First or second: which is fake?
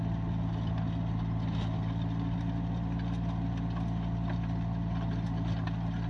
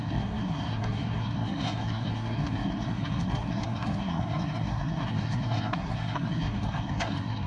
second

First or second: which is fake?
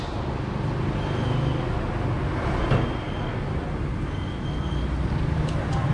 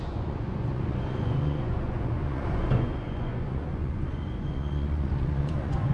second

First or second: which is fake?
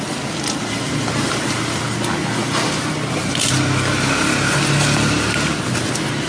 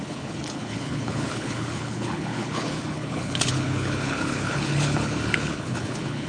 second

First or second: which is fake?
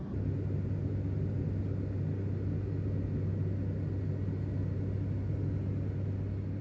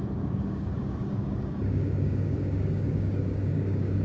second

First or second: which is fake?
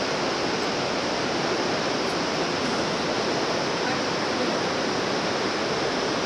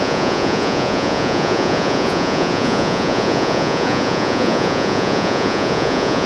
second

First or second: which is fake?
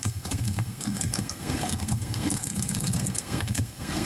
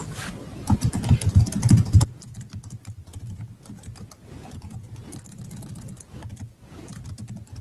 first